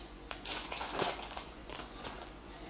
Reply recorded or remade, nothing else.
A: remade